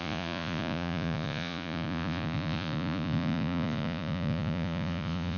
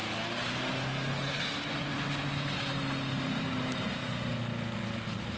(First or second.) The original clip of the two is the second